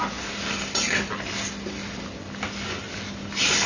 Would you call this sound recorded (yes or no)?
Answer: yes